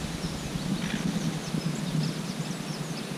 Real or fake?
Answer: real